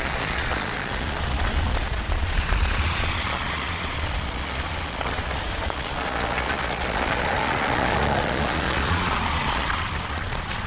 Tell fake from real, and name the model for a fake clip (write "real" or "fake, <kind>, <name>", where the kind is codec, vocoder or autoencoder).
fake, vocoder, Vocos